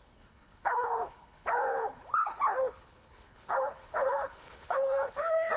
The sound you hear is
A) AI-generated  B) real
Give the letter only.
A